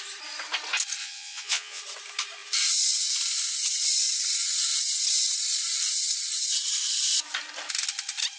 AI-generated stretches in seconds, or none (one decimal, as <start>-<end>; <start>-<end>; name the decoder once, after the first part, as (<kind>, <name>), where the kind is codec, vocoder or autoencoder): 1.0-1.8 (vocoder, Vocos)